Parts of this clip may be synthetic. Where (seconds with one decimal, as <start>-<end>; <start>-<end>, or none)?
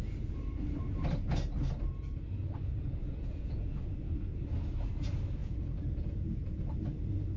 2.7-3.8; 5.4-6.6